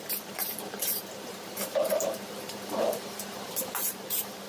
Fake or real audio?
fake